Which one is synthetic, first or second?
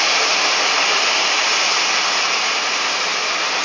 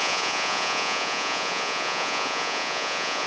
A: second